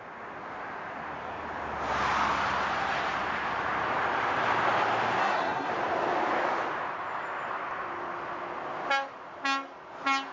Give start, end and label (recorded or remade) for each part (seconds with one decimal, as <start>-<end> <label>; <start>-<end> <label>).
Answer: 0.0-5.2 recorded; 5.2-5.7 remade; 5.7-10.3 recorded